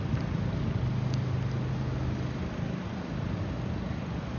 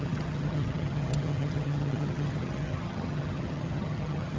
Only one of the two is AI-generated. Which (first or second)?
second